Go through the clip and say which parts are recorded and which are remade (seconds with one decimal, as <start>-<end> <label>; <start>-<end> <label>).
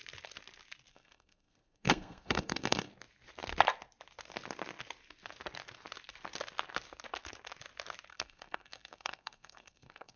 0.0-0.9 recorded; 0.9-2.9 remade; 2.9-8.1 recorded; 8.1-10.2 remade